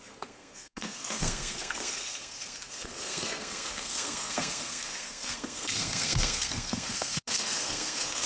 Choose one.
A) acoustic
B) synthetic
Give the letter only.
B